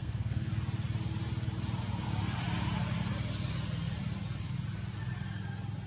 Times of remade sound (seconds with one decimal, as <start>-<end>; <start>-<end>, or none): 0.0-0.5